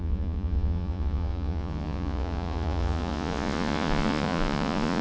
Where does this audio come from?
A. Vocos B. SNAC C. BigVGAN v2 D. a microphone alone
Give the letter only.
A